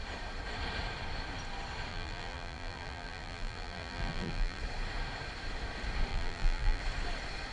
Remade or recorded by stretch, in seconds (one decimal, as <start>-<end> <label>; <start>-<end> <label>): 0.0-1.9 recorded; 1.9-4.6 remade; 4.6-6.1 recorded; 6.1-6.8 remade; 6.8-7.5 recorded